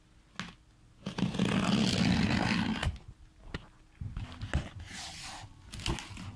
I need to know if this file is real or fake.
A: real